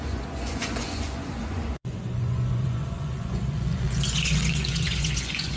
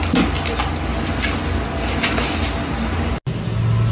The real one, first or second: second